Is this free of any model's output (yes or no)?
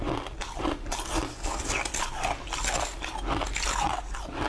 yes